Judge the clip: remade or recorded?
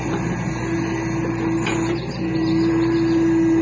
recorded